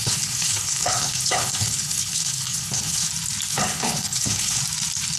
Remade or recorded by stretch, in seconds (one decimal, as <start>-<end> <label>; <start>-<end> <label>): 0.0-3.1 remade; 3.1-3.5 recorded; 3.5-4.6 remade; 4.6-5.2 recorded